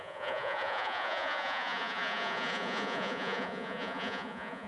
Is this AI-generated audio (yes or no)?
yes